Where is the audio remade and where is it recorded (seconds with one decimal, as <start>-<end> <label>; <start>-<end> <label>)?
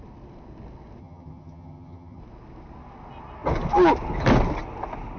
0.0-1.0 recorded; 1.0-2.2 remade; 2.2-5.2 recorded